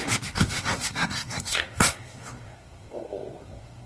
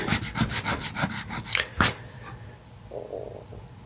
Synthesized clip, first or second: first